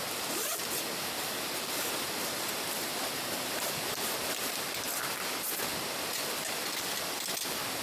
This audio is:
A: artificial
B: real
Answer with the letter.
B